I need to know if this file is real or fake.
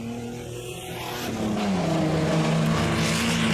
real